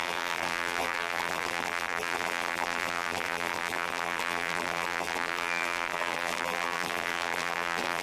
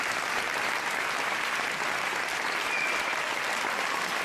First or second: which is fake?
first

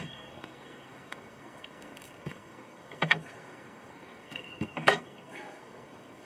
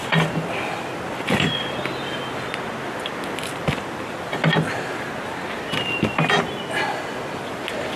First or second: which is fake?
first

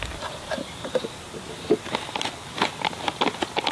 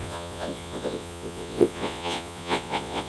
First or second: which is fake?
second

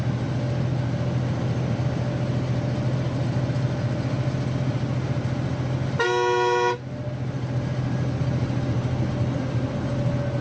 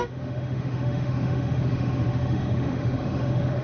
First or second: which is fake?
second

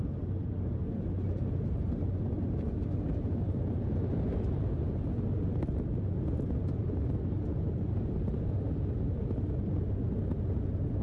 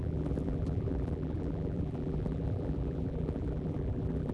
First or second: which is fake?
second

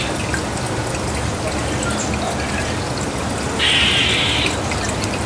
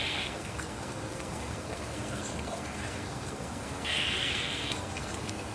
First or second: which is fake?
second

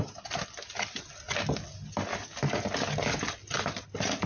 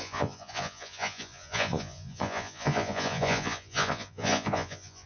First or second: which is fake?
second